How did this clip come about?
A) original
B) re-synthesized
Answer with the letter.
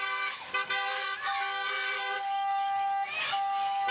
B